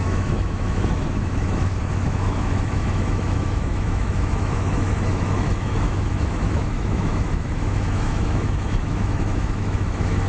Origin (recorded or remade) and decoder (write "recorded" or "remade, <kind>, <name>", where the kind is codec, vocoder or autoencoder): remade, autoencoder, DAC-VAE